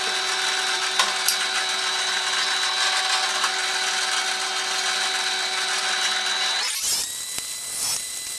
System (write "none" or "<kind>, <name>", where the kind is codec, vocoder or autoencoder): none